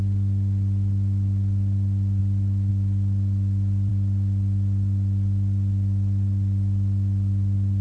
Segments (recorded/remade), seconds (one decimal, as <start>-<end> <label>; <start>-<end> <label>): 0.0-7.8 recorded

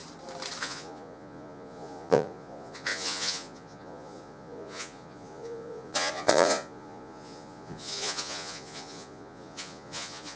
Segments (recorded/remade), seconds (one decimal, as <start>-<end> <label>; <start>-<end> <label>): 0.0-0.6 recorded; 0.6-10.4 remade

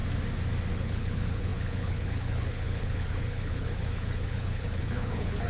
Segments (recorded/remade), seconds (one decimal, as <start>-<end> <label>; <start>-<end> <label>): 0.0-0.7 recorded; 0.7-5.5 remade

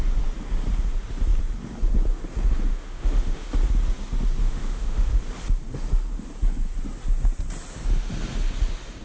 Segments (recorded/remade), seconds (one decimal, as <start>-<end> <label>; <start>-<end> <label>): 0.0-2.7 recorded; 2.7-3.5 remade; 3.5-4.4 recorded; 4.4-5.1 remade; 5.1-9.0 recorded